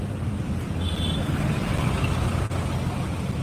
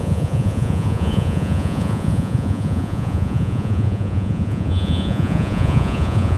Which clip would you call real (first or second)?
first